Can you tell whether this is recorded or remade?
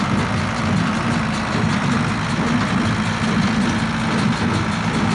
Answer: recorded